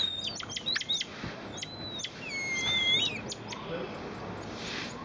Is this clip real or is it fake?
real